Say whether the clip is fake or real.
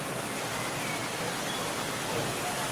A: real